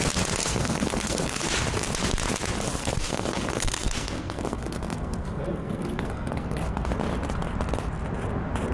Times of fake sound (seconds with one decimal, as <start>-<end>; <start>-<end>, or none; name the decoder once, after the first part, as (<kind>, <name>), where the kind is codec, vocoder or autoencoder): 0.4-1.5 (codec, SNAC); 2.8-6.9